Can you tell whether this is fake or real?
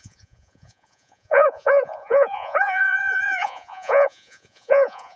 fake